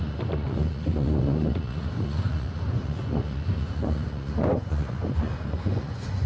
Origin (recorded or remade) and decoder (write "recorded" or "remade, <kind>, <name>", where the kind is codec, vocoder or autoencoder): remade, vocoder, Vocos